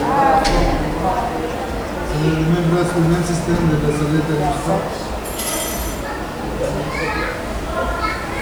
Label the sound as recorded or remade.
recorded